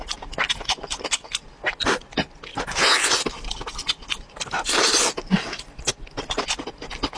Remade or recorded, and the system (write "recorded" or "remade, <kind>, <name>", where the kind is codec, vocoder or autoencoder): recorded